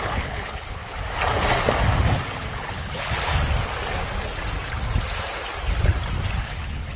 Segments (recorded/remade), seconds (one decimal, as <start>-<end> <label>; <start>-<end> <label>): 0.0-0.8 remade; 0.8-2.3 recorded; 2.3-3.3 remade; 3.3-6.4 recorded; 6.4-7.0 remade